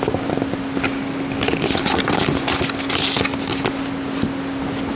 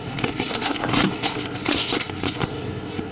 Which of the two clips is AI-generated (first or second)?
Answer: second